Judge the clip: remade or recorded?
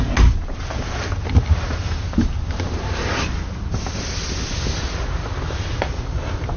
recorded